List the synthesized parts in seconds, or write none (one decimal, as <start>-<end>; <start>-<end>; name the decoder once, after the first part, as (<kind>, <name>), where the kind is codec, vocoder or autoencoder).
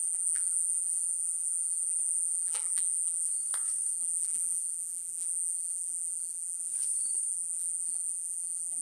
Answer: 0.0-3.3 (vocoder, BigVGAN v2); 3.9-6.7; 7.3-8.8